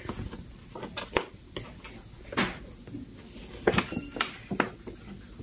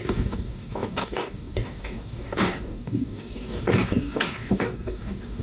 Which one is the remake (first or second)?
second